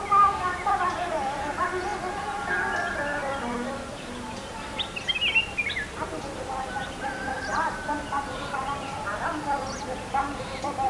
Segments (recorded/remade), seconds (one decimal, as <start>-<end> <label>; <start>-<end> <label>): 0.0-10.9 recorded